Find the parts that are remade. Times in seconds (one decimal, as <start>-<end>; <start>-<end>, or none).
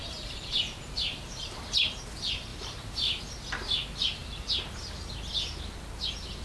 0.0-2.0; 2.5-3.2; 4.2-4.8